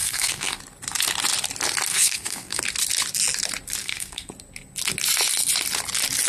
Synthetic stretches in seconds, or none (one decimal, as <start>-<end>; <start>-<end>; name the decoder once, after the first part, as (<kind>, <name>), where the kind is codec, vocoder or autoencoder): 0.0-0.6 (codec, SNAC); 1.9-2.6; 3.8-4.3